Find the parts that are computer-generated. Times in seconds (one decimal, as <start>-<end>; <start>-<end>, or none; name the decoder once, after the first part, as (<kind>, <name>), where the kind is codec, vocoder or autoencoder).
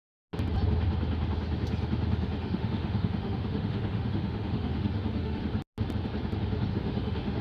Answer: 2.4-5.4 (autoencoder, DAC-VAE); 6.7-7.4